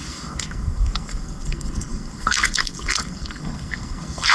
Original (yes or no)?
no